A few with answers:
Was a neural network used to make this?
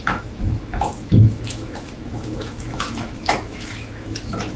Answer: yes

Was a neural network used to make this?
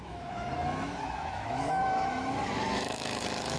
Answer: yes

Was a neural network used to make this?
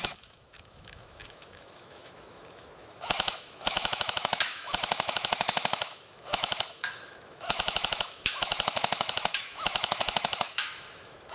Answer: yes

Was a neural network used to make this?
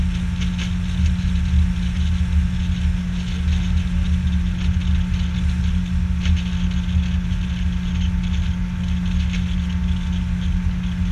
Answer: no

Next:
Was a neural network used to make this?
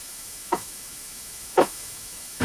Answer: yes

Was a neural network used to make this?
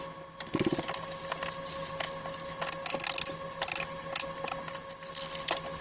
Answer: no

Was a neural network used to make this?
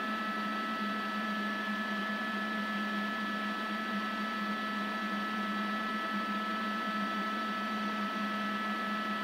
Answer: no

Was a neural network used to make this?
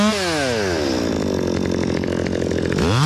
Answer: no